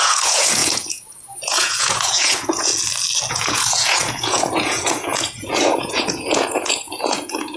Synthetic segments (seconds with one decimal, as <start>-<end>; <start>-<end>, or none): 0.0-2.7; 3.3-7.6